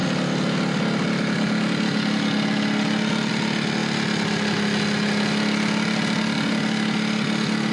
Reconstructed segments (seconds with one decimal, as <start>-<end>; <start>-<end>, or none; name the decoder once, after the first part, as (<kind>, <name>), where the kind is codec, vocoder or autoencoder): none